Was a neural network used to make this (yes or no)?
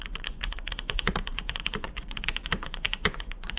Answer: yes